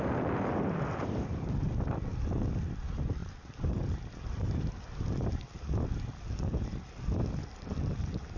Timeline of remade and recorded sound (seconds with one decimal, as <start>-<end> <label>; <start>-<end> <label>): 0.0-2.1 remade; 2.1-2.8 recorded; 2.8-3.2 remade; 3.2-3.8 recorded; 3.8-8.4 remade